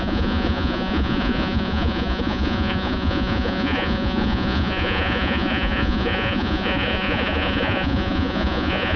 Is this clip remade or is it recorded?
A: remade